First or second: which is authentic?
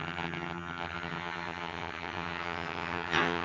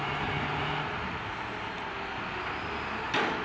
second